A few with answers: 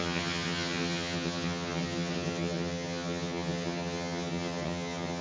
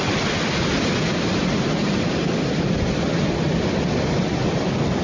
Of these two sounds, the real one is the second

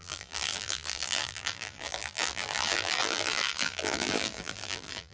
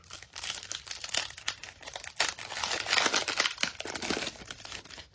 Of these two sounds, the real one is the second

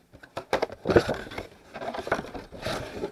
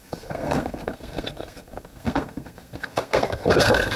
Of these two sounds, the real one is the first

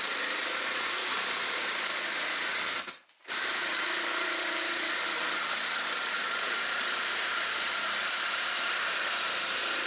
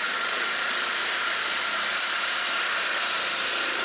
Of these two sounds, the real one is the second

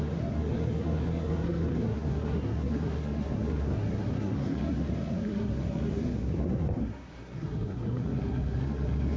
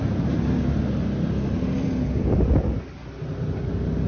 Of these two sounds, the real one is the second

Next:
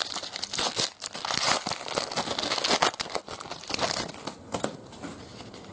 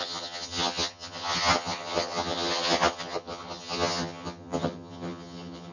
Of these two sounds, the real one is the first